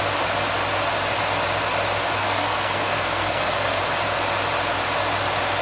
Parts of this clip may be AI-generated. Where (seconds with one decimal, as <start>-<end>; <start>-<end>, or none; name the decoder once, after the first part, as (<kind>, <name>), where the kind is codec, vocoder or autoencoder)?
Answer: 2.2-3.8 (codec, SNAC)